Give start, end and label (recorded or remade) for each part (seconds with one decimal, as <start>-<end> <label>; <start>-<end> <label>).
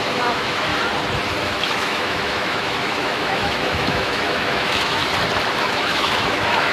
0.0-0.7 remade; 0.7-1.4 recorded; 1.4-5.0 remade; 5.0-5.6 recorded; 5.6-6.7 remade